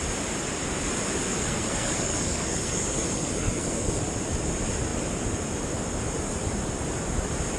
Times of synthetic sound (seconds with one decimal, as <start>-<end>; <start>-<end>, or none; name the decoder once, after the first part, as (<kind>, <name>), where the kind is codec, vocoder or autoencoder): 1.3-4.0 (codec, SNAC)